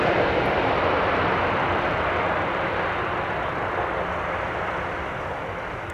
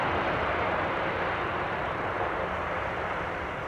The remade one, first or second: second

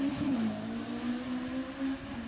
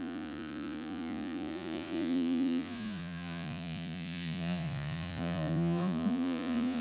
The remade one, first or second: second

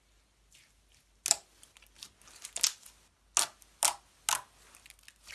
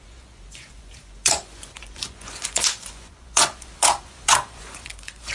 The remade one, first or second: second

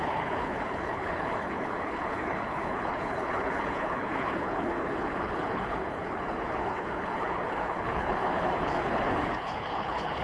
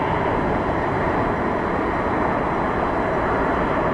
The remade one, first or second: first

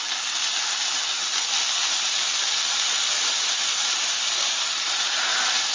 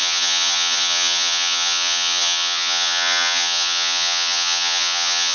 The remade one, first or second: second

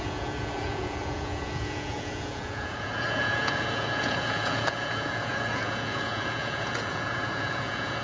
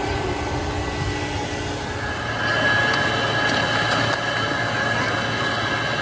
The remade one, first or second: first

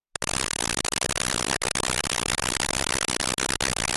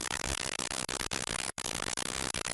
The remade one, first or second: second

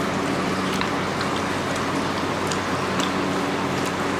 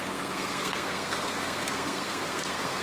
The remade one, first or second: second